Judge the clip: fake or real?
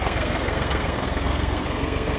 fake